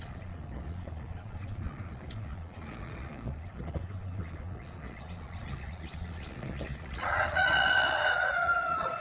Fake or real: fake